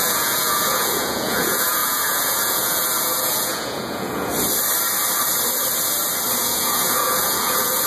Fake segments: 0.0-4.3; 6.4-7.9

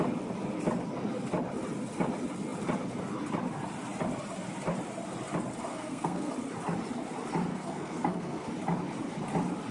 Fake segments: 5.7-6.3; 7.5-8.5

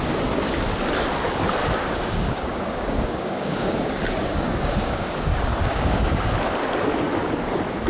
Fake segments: 1.6-6.3

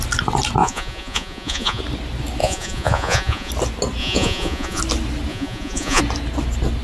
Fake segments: 0.6-1.8; 2.4-3.5; 4.0-4.8; 5.3-6.0

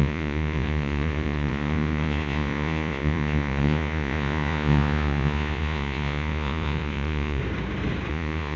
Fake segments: 0.0-7.4; 8.1-8.6

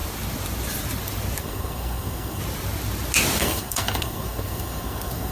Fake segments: 1.4-2.4; 3.4-5.3

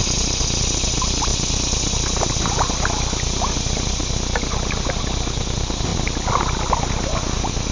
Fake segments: none